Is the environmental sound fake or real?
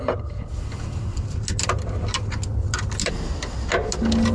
real